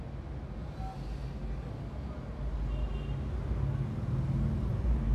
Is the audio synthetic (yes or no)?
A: no